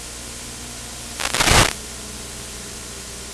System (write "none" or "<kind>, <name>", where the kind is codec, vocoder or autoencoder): none